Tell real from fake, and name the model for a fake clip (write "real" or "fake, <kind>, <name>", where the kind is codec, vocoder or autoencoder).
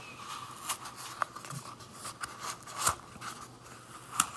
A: real